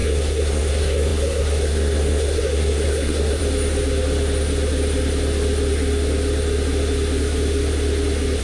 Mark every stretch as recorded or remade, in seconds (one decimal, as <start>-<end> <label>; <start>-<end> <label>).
0.0-3.4 remade; 3.4-8.4 recorded